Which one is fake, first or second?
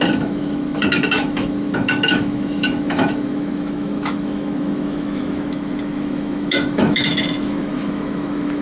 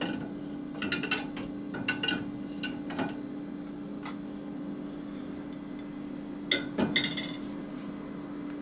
first